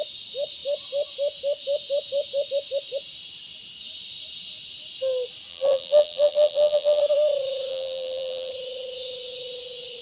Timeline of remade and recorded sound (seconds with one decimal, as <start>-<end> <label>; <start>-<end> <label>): 0.0-5.5 recorded; 5.5-7.0 remade; 7.0-7.7 recorded; 7.7-8.5 remade; 8.5-10.0 recorded